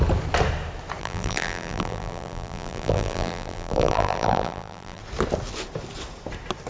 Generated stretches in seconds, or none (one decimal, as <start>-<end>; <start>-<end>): 1.0-5.0